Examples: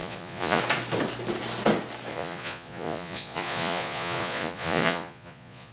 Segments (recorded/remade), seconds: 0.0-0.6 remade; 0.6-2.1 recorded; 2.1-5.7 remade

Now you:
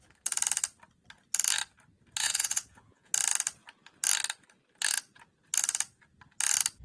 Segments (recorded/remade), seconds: 0.0-2.2 recorded; 2.2-3.1 remade; 3.1-6.8 recorded

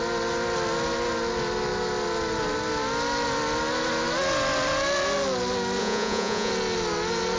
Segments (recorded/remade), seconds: 0.0-5.8 recorded; 5.8-6.5 remade; 6.5-7.4 recorded

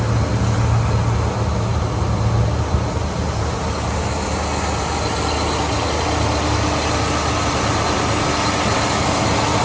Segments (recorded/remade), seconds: 0.0-9.6 recorded

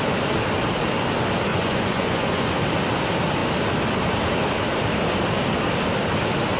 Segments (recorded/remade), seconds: 0.0-1.5 recorded; 1.5-2.5 remade; 2.5-6.6 recorded